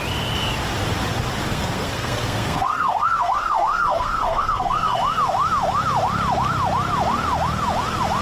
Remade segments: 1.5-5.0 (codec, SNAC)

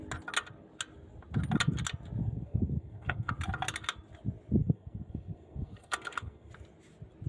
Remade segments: 2.2-3.3 (codec, SNAC); 4.6-6.5

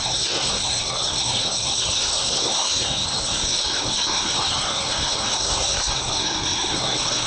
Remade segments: 0.0-7.3 (codec, SNAC)

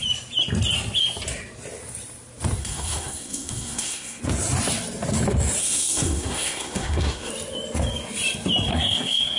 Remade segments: 2.6-4.2 (codec, SNAC); 5.6-7.3; 8.7-9.4

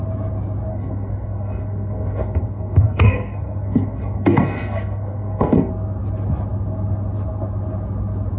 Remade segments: 0.7-5.7 (codec, SNAC)